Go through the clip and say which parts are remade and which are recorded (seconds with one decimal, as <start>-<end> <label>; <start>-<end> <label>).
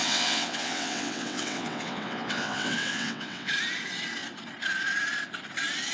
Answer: 0.0-3.5 remade; 3.5-5.9 recorded